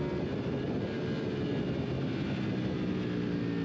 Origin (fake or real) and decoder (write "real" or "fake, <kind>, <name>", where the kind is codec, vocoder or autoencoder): real